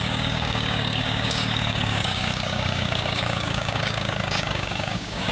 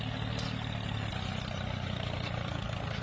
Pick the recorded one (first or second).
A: second